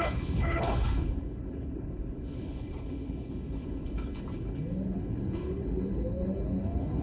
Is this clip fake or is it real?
fake